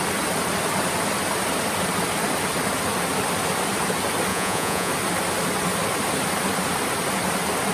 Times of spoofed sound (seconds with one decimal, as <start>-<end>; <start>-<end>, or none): 4.3-4.9